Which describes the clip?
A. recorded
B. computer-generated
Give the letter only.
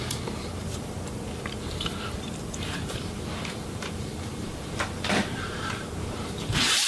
B